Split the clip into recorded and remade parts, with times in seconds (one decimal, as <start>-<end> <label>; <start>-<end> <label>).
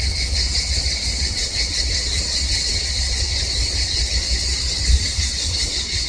0.0-6.1 remade